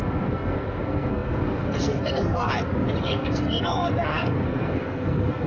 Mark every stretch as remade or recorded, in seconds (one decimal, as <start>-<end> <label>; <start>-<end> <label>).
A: 0.0-2.5 remade; 2.5-3.0 recorded; 3.0-5.5 remade